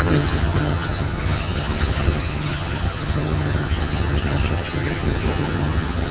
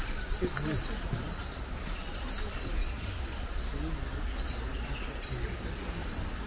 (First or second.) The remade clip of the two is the first